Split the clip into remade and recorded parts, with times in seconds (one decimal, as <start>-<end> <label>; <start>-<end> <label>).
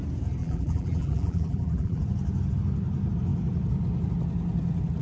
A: 0.0-0.4 recorded; 0.4-2.0 remade; 2.0-5.0 recorded